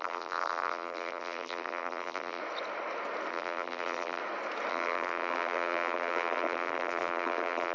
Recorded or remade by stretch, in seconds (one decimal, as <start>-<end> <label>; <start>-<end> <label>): 0.0-2.4 remade; 2.4-3.3 recorded; 3.3-4.2 remade; 4.2-4.7 recorded; 4.7-7.7 remade